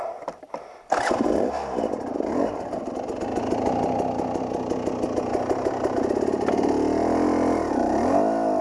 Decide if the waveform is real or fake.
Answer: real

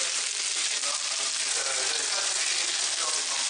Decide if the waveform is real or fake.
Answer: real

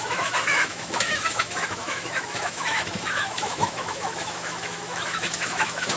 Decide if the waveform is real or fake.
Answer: fake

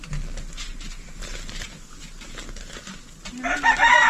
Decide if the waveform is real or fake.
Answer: real